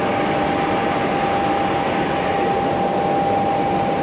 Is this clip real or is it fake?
real